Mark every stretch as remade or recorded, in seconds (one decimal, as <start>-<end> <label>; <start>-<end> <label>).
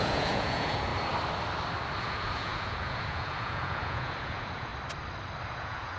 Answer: 0.0-0.9 remade; 0.9-2.0 recorded; 2.0-4.7 remade; 4.7-5.5 recorded; 5.5-6.0 remade